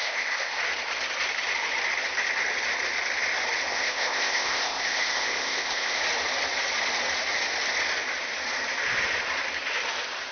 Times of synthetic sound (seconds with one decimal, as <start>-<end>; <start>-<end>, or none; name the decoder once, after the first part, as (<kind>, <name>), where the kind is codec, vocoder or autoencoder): 0.0-0.6 (codec, ZipCodec); 3.7-6.0